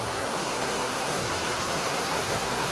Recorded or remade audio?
remade